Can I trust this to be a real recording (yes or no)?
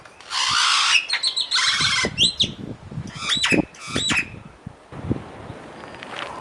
yes